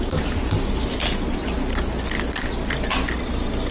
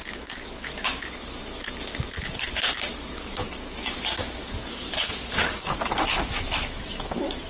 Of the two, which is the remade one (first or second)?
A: second